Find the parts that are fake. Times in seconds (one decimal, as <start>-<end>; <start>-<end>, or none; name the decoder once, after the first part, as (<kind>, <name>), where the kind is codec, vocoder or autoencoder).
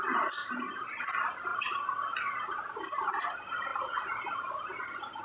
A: 0.4-1.0 (vocoder, BigVGAN v2); 1.5-3.1; 3.7-5.2